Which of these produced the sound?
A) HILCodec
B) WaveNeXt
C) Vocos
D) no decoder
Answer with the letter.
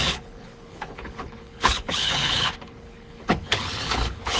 A